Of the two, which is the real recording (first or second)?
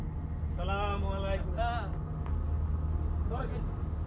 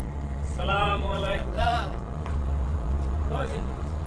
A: first